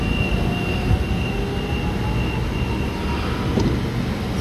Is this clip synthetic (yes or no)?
no